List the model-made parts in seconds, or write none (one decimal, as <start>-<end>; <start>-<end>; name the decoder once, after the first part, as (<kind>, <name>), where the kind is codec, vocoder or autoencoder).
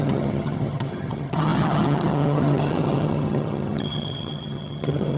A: 0.0-5.2 (vocoder, HiFi-GAN)